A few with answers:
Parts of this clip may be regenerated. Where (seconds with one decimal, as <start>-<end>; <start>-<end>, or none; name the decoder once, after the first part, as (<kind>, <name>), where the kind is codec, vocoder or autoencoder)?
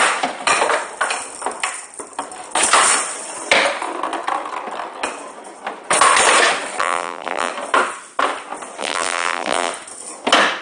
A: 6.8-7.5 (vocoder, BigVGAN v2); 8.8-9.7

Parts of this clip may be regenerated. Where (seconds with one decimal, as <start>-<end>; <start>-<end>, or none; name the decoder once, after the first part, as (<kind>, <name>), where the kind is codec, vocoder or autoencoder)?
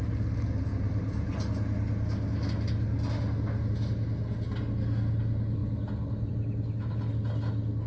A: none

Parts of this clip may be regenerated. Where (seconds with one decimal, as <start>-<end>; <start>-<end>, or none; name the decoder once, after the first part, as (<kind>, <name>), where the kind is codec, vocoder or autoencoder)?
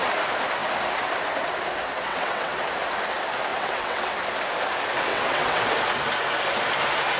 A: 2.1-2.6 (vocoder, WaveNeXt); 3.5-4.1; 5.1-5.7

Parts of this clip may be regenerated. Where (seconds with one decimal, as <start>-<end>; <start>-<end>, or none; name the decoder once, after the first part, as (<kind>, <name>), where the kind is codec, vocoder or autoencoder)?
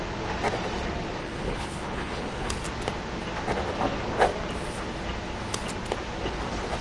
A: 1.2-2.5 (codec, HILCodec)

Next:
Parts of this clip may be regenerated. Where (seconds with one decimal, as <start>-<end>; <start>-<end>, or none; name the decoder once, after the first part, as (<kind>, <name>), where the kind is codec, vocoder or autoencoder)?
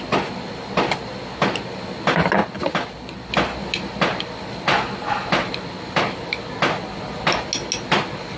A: none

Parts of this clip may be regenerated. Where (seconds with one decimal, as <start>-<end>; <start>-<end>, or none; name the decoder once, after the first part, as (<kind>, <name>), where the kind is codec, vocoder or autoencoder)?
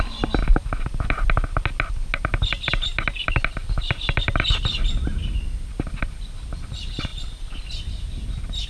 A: none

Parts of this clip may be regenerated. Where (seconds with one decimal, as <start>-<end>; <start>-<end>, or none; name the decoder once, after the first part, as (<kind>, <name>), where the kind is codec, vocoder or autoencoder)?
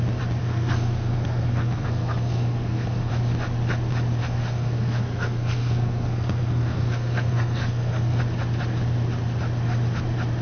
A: 0.4-3.1 (codec, SNAC); 4.2-8.2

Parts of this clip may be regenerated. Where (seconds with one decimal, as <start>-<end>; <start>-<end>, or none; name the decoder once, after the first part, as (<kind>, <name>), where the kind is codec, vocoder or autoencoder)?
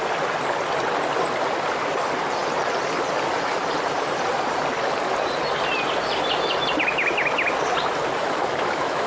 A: 8.2-9.1 (autoencoder, DAC-VAE)